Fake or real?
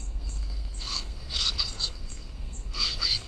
fake